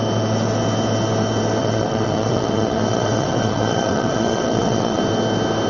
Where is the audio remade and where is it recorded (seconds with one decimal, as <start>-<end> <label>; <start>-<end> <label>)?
0.0-1.6 recorded; 1.6-5.0 remade; 5.0-5.7 recorded